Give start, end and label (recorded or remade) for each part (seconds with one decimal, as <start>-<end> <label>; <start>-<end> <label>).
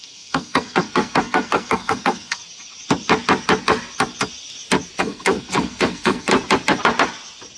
0.0-2.4 remade; 2.4-5.0 recorded; 5.0-6.3 remade; 6.3-7.6 recorded